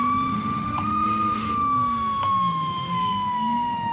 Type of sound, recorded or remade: remade